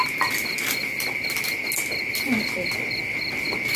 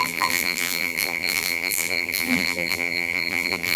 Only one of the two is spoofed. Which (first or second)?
second